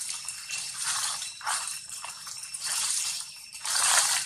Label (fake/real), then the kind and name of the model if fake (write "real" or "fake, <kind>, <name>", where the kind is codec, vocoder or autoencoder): fake, vocoder, BigVGAN v2